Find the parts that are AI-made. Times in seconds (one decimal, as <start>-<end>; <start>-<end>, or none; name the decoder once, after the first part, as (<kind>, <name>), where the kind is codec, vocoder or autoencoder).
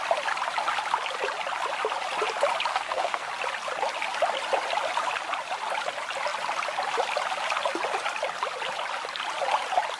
2.7-3.3 (codec, SNAC)